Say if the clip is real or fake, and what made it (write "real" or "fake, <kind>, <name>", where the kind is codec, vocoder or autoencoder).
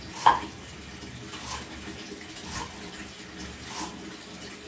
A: real